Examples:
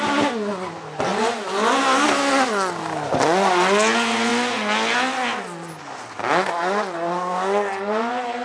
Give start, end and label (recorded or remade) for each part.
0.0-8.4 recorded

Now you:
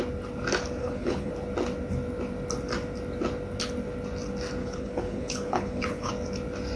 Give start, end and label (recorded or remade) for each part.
0.0-0.8 recorded; 0.8-1.3 remade; 1.3-4.6 recorded; 4.6-6.1 remade; 6.1-6.8 recorded

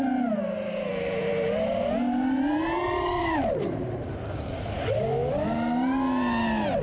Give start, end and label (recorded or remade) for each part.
0.0-0.9 recorded; 0.9-5.0 remade; 5.0-6.8 recorded

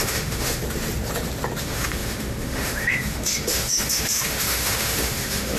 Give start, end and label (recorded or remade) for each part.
0.0-0.6 remade; 0.6-1.6 recorded; 1.6-5.6 remade

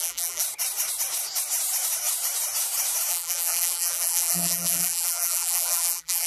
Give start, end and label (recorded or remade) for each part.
0.0-0.4 remade; 0.4-3.1 recorded; 3.1-6.3 remade

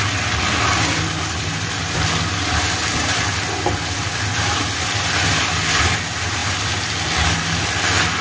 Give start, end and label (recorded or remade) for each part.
0.0-8.2 recorded